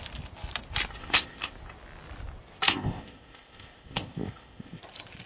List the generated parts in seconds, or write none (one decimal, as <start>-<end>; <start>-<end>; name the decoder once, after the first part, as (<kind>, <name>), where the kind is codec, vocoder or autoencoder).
1.0-1.5 (codec, ZipCodec); 2.7-4.8